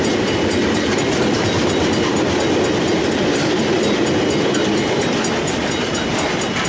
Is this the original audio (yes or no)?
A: yes